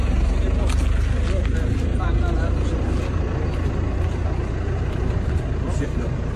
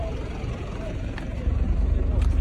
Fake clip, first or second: second